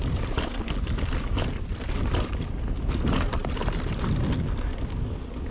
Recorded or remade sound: recorded